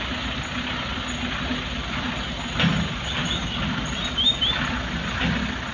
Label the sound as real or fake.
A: real